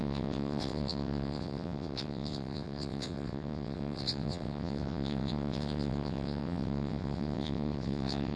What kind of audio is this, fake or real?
fake